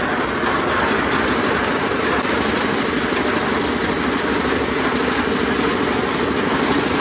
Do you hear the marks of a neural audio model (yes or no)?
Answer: no